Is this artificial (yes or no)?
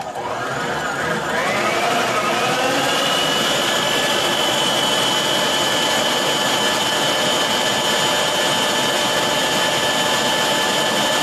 no